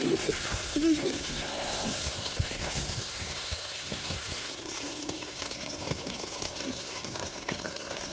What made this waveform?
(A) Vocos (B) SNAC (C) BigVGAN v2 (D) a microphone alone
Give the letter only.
B